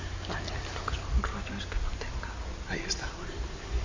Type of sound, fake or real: real